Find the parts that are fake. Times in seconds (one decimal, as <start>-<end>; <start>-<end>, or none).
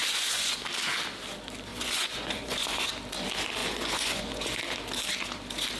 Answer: 0.0-0.6; 1.7-2.9; 3.6-4.6